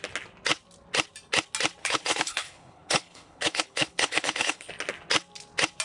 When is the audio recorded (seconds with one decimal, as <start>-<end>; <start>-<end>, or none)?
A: 0.0-1.8; 4.7-5.8